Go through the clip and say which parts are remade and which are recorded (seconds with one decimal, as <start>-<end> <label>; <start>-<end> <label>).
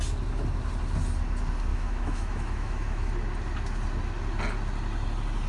0.0-1.7 recorded; 1.7-3.1 remade; 3.1-5.5 recorded